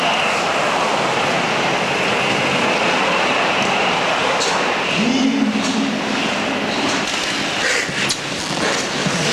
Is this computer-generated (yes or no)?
no